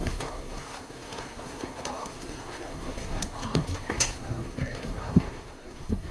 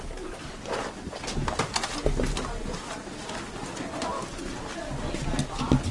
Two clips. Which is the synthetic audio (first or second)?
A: first